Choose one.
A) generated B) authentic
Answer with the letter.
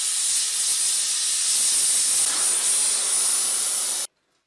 B